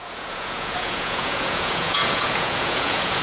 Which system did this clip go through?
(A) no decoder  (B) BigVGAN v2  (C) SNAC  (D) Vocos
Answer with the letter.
D